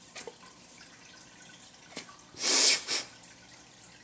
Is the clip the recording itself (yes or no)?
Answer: yes